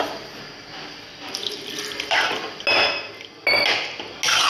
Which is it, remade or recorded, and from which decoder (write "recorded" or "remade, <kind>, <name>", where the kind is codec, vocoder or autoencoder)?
recorded